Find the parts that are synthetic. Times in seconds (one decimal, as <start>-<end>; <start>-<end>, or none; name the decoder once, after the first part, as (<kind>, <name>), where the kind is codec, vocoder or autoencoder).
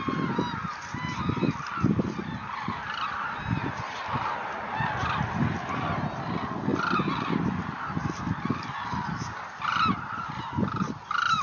none